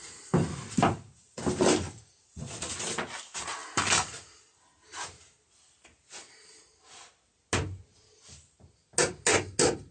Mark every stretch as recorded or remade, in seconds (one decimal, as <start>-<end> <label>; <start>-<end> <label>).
0.0-1.4 remade; 1.4-9.9 recorded

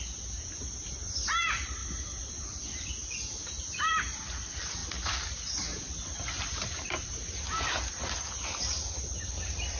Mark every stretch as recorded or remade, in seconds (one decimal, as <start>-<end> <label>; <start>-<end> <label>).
0.0-9.8 recorded

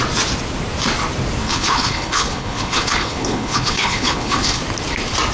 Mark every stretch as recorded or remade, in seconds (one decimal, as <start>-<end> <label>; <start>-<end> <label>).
0.0-1.4 recorded; 1.4-4.6 remade; 4.6-5.3 recorded

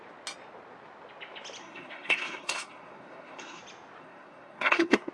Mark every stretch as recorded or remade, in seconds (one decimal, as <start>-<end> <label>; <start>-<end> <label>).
0.0-1.6 recorded; 1.6-3.6 remade; 3.6-4.0 recorded; 4.0-5.1 remade

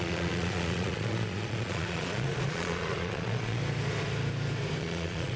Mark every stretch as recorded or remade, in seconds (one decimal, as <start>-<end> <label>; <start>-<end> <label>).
0.0-3.6 remade; 3.6-4.8 recorded; 4.8-5.4 remade

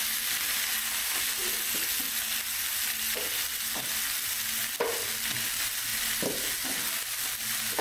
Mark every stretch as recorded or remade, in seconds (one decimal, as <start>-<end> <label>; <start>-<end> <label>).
0.0-7.8 recorded

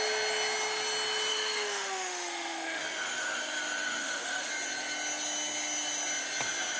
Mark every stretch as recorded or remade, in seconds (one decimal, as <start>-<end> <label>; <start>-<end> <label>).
0.0-1.3 recorded; 1.3-2.8 remade; 2.8-4.0 recorded; 4.0-4.5 remade; 4.5-6.8 recorded

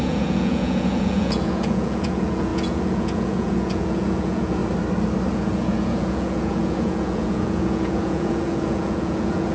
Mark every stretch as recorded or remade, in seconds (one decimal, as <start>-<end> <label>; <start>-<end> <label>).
0.0-4.6 remade; 4.6-5.3 recorded; 5.3-9.5 remade